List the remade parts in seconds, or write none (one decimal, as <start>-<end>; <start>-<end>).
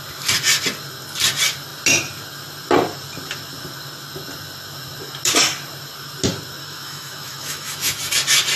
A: 6.6-8.0